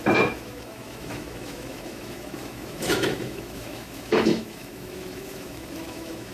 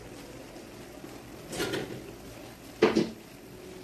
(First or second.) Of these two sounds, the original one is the second